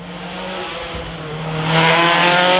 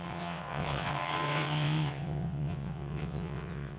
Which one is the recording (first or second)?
first